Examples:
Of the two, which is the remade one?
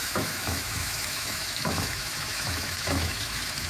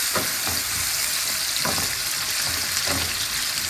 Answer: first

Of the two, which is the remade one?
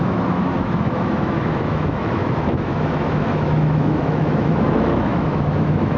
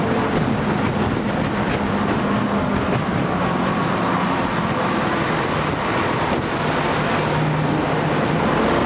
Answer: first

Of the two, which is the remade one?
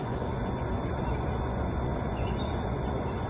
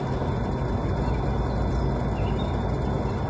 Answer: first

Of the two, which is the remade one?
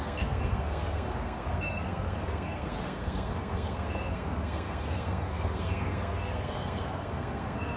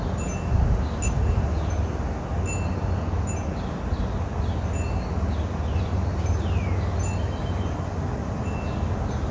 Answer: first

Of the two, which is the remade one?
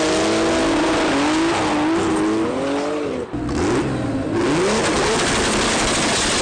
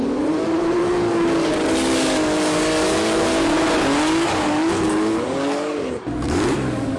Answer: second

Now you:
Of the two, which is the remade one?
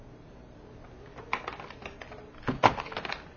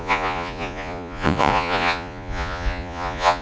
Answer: second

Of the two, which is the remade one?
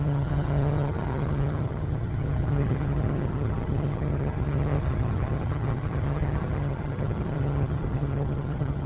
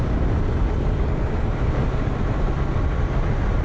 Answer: first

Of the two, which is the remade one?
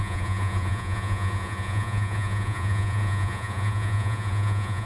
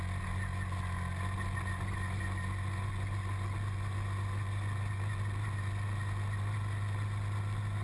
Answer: first